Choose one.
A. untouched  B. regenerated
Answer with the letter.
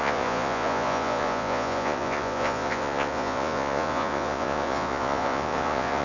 B